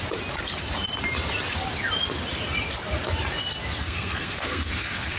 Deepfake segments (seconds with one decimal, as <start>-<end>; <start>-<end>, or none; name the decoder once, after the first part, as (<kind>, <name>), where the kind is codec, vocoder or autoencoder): 3.8-5.2 (codec, SNAC)